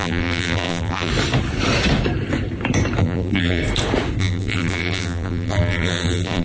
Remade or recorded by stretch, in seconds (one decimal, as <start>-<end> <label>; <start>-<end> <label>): 0.0-1.1 remade; 1.1-3.0 recorded; 3.0-3.6 remade; 3.6-4.2 recorded; 4.2-6.4 remade